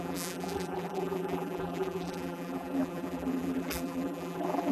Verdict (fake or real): fake